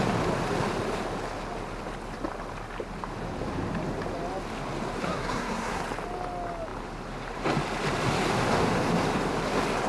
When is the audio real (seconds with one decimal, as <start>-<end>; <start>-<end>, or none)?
0.0-5.0; 5.8-9.9